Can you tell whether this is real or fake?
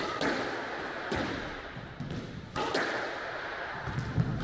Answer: real